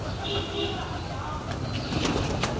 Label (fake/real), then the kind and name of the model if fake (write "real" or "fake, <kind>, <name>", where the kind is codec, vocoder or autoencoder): real